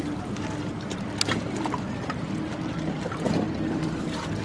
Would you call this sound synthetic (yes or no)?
no